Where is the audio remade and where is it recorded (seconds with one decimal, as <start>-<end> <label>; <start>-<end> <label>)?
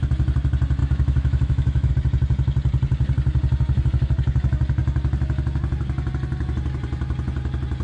0.0-0.8 recorded; 0.8-1.9 remade; 1.9-7.8 recorded